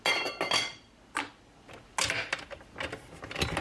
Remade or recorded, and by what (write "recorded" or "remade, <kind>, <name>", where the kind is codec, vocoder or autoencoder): recorded